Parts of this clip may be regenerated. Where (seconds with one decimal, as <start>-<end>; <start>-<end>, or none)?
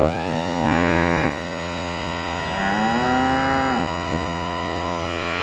0.0-2.4; 3.8-5.4